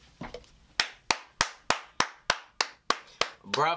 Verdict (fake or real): real